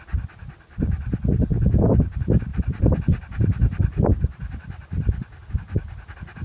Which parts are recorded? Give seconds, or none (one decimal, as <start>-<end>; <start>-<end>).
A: 0.0-6.4